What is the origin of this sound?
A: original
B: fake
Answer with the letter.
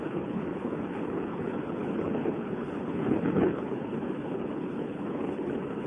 B